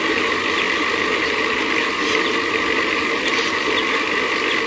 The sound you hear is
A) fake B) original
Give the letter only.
B